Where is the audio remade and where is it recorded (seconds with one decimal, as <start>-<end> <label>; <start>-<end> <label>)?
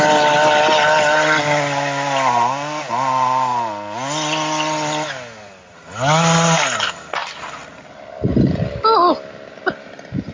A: 0.0-7.2 recorded; 7.2-8.8 remade; 8.8-10.3 recorded